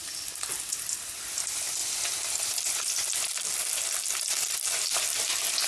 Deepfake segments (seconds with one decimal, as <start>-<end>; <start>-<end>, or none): none